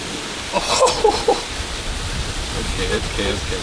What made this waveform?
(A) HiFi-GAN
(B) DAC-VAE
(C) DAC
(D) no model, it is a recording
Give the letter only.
D